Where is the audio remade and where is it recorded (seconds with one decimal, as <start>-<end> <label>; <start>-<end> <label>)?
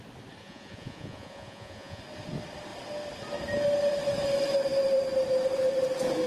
0.0-0.4 recorded; 0.4-2.0 remade; 2.0-6.3 recorded